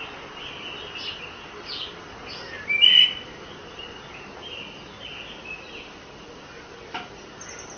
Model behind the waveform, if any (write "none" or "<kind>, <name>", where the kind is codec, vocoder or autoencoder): none